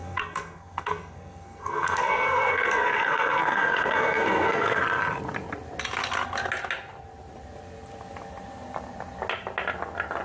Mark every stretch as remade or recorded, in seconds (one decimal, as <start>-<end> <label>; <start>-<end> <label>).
0.0-4.8 remade; 4.8-10.2 recorded